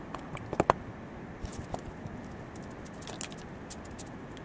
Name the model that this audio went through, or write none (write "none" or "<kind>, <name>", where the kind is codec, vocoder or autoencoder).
none